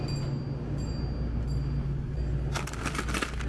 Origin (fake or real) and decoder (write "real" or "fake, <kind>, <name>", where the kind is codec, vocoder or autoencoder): real